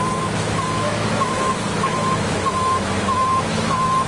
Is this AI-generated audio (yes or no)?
yes